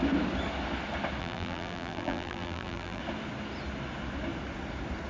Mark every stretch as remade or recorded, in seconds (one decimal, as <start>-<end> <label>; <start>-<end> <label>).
0.0-1.2 recorded; 1.2-3.0 remade; 3.0-5.1 recorded